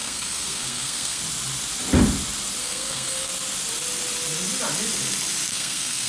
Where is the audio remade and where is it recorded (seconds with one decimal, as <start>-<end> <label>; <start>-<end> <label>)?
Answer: 0.0-1.2 remade; 1.2-2.6 recorded; 2.6-3.3 remade; 3.3-5.5 recorded; 5.5-6.1 remade